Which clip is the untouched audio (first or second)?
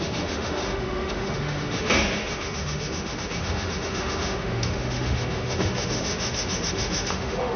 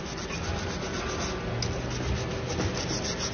second